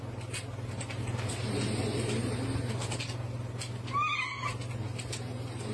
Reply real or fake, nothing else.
real